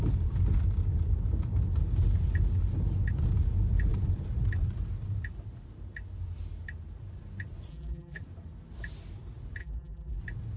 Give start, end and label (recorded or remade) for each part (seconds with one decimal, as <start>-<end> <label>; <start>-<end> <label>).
0.0-7.7 recorded; 7.7-8.2 remade; 8.2-9.6 recorded; 9.6-10.2 remade; 10.2-10.6 recorded